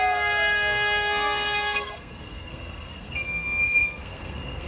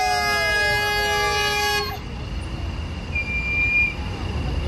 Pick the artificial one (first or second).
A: first